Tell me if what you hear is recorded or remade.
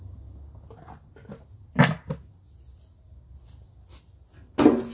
recorded